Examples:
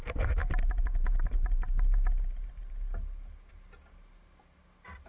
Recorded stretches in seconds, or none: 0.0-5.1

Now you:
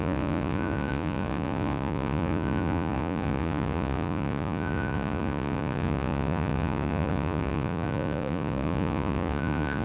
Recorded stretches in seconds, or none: none

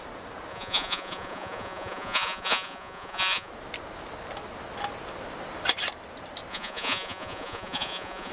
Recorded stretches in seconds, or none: 0.0-0.5; 3.5-6.5

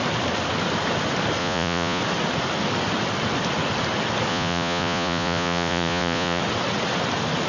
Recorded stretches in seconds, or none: 0.0-1.4; 2.0-4.3; 6.4-7.5

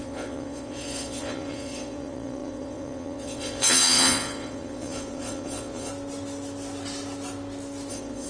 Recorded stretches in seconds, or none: 5.9-7.9

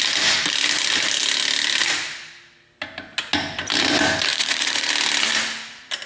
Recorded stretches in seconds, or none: 0.0-4.3; 4.9-6.1